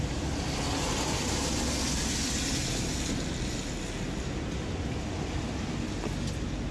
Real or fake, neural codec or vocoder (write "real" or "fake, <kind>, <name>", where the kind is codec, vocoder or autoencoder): real